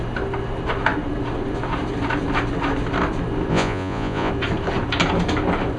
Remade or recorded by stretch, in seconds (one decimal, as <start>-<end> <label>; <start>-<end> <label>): 0.0-3.5 recorded; 3.5-4.3 remade; 4.3-5.8 recorded